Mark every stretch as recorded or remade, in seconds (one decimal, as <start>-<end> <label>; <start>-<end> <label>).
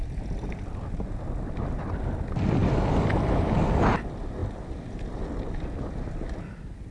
0.0-6.9 recorded